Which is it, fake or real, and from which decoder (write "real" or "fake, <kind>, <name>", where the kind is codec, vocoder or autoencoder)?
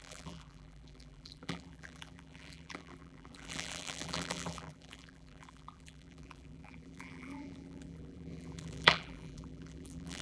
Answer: fake, vocoder, BigVGAN v2